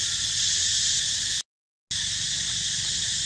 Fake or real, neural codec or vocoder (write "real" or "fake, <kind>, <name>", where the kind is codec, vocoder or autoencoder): real